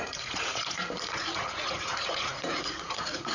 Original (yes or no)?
no